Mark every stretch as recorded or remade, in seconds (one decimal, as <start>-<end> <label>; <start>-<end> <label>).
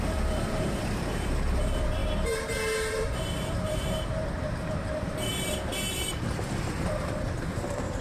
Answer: 0.0-5.7 remade; 5.7-6.8 recorded; 6.8-8.0 remade